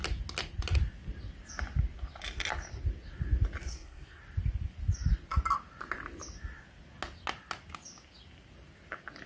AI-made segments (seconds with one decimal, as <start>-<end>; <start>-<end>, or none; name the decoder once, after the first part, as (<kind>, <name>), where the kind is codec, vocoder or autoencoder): 3.6-4.2 (codec, SNAC)

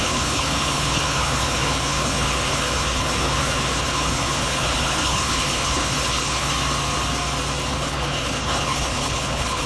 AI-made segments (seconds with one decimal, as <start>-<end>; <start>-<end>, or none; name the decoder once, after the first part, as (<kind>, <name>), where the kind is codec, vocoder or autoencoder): 0.0-6.5 (codec, HILCodec); 7.7-9.7

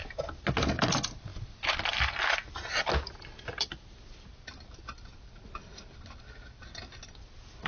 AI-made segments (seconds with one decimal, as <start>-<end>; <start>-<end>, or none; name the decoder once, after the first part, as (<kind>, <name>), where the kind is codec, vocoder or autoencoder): none